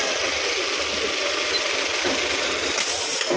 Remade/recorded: recorded